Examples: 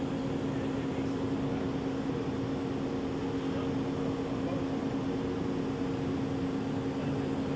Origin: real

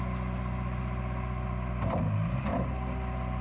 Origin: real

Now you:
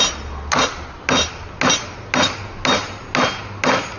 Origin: real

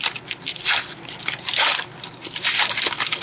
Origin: real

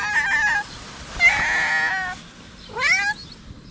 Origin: real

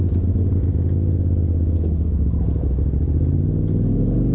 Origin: real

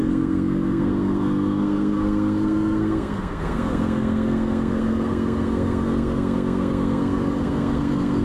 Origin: fake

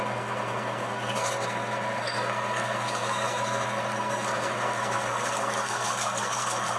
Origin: fake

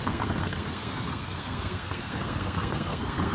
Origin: fake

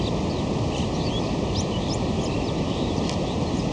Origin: real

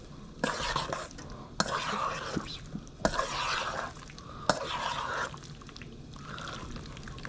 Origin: real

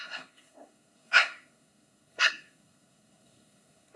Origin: fake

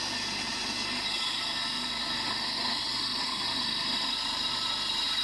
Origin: real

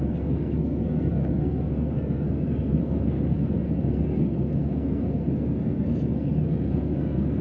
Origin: fake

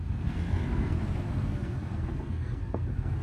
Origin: fake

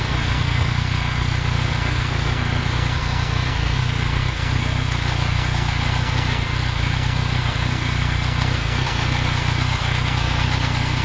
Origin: fake